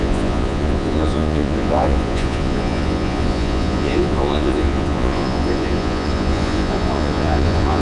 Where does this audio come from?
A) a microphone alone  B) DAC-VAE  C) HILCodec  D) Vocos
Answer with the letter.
D